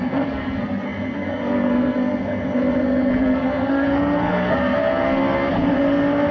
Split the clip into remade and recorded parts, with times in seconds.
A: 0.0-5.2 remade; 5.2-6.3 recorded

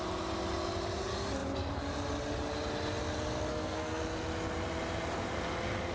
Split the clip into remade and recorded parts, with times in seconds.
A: 0.0-3.5 recorded; 3.5-4.0 remade; 4.0-5.9 recorded

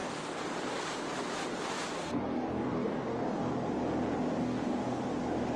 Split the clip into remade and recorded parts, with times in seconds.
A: 0.0-0.5 remade; 0.5-2.0 recorded; 2.0-3.5 remade; 3.5-4.4 recorded; 4.4-5.0 remade; 5.0-5.6 recorded

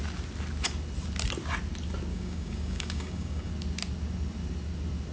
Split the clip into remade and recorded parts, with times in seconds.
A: 0.0-2.1 recorded; 2.1-3.5 remade; 3.5-5.1 recorded

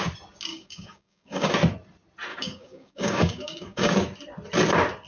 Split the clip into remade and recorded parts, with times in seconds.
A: 0.0-0.5 recorded; 0.5-1.5 remade; 1.5-2.3 recorded; 2.3-3.9 remade; 3.9-5.1 recorded